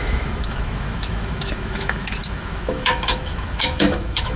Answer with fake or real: fake